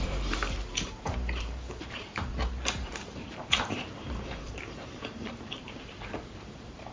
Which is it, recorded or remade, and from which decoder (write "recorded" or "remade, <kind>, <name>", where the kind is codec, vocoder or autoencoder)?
remade, vocoder, BigVGAN v2